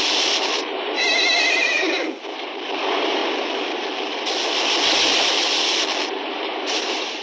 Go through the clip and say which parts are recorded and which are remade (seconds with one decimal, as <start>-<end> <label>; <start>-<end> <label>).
0.0-3.2 remade; 3.2-6.3 recorded; 6.3-7.2 remade